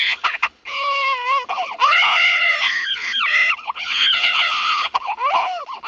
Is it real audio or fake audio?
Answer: fake